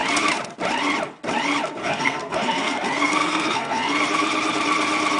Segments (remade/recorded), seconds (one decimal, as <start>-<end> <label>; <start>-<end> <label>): 0.0-1.8 recorded; 1.8-4.0 remade; 4.0-5.2 recorded